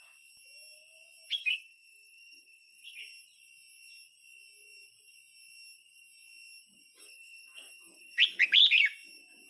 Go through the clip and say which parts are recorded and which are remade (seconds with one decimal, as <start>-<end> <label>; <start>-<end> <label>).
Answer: 0.0-1.4 recorded; 1.4-3.0 remade; 3.0-7.0 recorded; 7.0-8.2 remade; 8.2-9.5 recorded